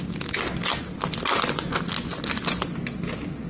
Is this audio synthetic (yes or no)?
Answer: no